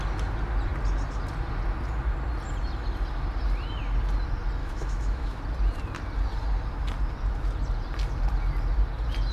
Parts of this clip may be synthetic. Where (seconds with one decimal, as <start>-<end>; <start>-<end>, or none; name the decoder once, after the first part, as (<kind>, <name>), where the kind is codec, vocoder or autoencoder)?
4.6-5.4 (autoencoder, DAC-VAE)